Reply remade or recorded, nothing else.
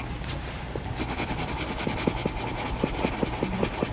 recorded